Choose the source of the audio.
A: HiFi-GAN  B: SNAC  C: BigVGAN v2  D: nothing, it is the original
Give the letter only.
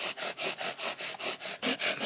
D